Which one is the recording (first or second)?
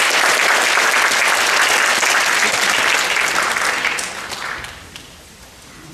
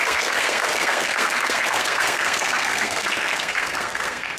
first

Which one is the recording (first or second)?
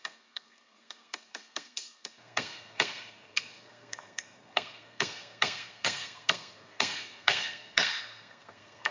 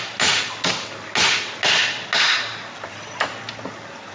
second